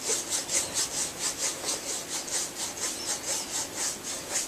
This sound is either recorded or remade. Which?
recorded